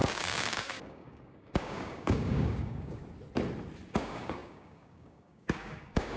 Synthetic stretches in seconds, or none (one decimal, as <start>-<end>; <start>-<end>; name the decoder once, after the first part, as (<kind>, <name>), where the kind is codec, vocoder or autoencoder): 0.0-3.0 (codec, DAC); 3.9-6.2